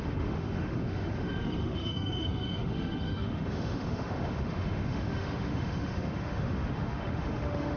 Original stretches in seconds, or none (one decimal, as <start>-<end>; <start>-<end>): none